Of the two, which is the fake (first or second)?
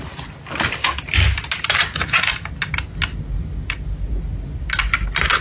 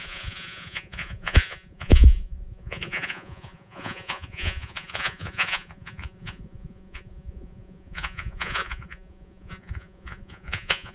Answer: second